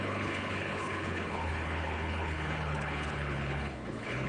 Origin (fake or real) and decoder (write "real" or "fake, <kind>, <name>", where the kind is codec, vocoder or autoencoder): fake, codec, HILCodec